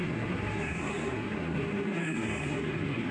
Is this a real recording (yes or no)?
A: no